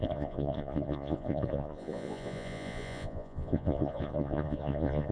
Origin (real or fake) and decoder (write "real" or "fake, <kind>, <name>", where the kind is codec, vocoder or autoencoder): fake, vocoder, Vocos